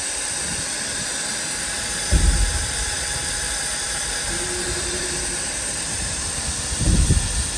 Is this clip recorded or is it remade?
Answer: remade